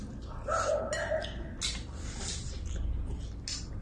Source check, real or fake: real